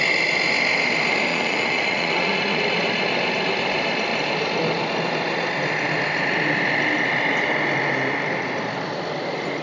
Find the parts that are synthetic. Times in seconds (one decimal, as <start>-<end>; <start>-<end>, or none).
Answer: 1.3-2.6